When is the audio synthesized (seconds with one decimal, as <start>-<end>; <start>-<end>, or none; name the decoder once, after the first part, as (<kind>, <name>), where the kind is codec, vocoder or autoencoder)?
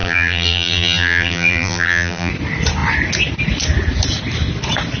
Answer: 0.0-2.3 (vocoder, BigVGAN v2)